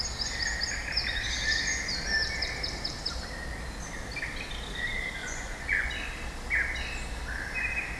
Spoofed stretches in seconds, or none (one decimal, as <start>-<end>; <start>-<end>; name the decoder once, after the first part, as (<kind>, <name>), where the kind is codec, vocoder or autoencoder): 5.2-5.9 (vocoder, Vocos)